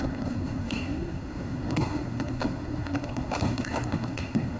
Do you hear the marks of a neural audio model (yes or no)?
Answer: yes